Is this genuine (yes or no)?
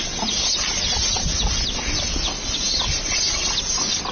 yes